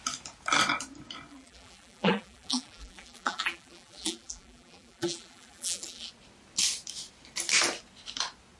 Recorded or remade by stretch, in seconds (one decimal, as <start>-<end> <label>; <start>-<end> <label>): 0.0-1.3 recorded; 1.3-6.1 remade; 6.1-8.6 recorded